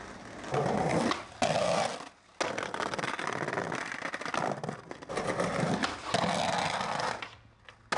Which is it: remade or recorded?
recorded